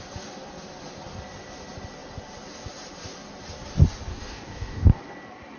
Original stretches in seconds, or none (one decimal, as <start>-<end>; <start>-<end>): 0.0-4.1; 5.0-5.6